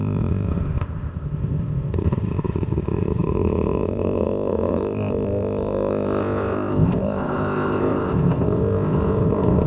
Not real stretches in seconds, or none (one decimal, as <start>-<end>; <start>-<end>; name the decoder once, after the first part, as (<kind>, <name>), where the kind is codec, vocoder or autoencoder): 0.0-9.7 (codec, ZipCodec)